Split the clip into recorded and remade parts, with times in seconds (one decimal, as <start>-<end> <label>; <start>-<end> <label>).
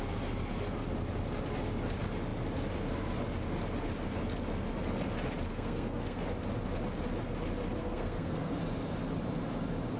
0.0-5.5 recorded; 5.5-6.2 remade; 6.2-7.8 recorded; 7.8-8.5 remade; 8.5-10.0 recorded